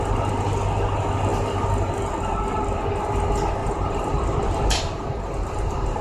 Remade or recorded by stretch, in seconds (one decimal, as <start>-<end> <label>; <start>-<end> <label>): 0.0-3.6 recorded; 3.6-6.0 remade